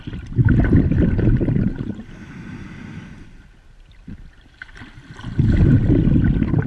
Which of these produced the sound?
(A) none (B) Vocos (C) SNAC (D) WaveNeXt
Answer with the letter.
A